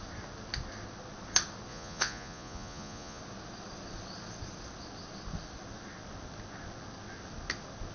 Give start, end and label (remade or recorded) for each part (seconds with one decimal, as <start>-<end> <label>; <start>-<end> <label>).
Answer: 0.0-1.7 recorded; 1.7-3.2 remade; 3.2-7.9 recorded